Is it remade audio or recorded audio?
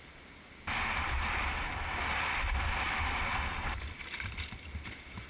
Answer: recorded